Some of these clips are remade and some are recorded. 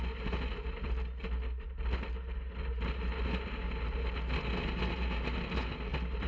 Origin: recorded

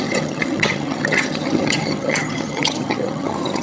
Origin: remade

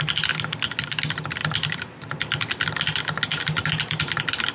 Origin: recorded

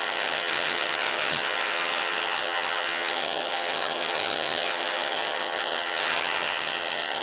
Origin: remade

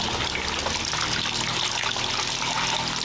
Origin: recorded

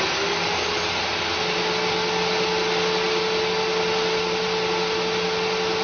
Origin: recorded